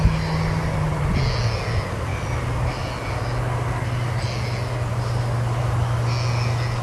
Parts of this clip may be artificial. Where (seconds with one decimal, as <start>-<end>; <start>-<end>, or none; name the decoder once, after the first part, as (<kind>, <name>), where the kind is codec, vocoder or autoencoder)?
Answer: none